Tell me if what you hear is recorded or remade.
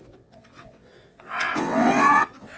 remade